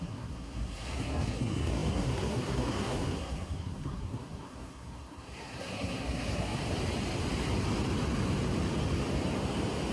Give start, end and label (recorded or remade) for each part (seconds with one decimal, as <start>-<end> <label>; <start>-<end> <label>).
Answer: 0.0-6.6 remade; 6.6-9.9 recorded